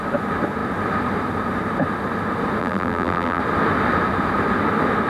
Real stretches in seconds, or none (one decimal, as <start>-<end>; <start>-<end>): 0.0-2.6; 3.4-5.1